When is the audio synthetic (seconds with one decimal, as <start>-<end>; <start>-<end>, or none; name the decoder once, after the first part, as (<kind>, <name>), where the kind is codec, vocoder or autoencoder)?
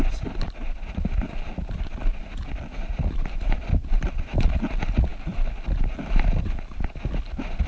none